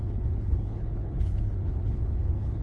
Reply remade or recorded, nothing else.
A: remade